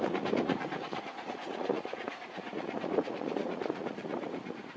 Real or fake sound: fake